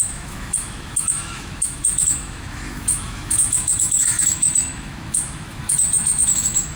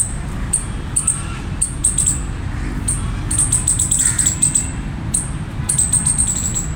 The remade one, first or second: first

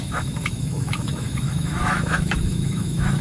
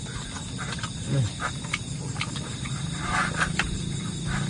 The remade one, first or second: first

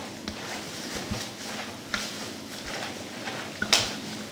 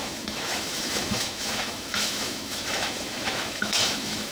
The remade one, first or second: second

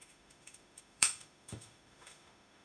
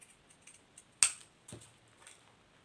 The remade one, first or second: first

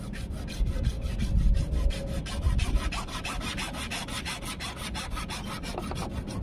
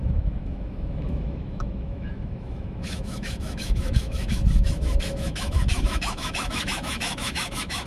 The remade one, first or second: second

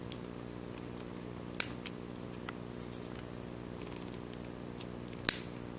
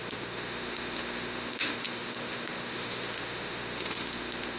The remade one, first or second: second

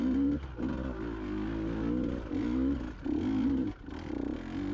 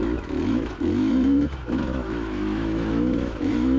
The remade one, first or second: second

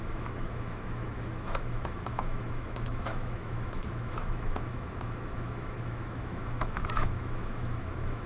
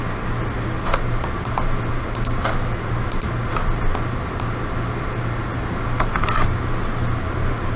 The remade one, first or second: first